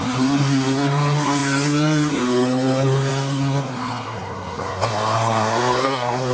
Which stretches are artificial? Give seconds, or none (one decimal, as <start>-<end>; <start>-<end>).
0.0-6.3